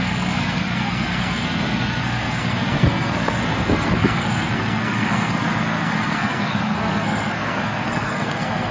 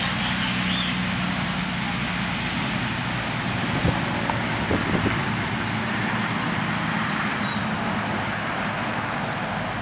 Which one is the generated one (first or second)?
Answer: first